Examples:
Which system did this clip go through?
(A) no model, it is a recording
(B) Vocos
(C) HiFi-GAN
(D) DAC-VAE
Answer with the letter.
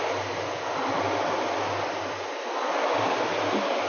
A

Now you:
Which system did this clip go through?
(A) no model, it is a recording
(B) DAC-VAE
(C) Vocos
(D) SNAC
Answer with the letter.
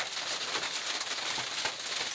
A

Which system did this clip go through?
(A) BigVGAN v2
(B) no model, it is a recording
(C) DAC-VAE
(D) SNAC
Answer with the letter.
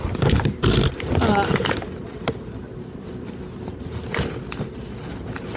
B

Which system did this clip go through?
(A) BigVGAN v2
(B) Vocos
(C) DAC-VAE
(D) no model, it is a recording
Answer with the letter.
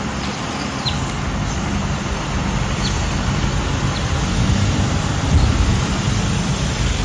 D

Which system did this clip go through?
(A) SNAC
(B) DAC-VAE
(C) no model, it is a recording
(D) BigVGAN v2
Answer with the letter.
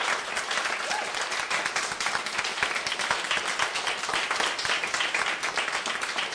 D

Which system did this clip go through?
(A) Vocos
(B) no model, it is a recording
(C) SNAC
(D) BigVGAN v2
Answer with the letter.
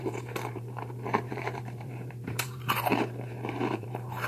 D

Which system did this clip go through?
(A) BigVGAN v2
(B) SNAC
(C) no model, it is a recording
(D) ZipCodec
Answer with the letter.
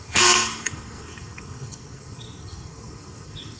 B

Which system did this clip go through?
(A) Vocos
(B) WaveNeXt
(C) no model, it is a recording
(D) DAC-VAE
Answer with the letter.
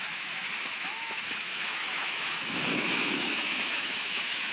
D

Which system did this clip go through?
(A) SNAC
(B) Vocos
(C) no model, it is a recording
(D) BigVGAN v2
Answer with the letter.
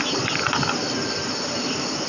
C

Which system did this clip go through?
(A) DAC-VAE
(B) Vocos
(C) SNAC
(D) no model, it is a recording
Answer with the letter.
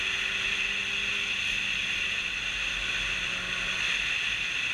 D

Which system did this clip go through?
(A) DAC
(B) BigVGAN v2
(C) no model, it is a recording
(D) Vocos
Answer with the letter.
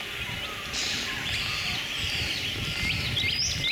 C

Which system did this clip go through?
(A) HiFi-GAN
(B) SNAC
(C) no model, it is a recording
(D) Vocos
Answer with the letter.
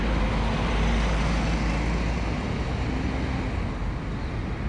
C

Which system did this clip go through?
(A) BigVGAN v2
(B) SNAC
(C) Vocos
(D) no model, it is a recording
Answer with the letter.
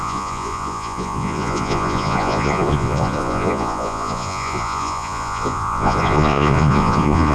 C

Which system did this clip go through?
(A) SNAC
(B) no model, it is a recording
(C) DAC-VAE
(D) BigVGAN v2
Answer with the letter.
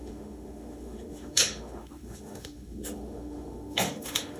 C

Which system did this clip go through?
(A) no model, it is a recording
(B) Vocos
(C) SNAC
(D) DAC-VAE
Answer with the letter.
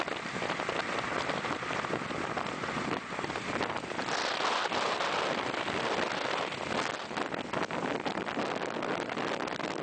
A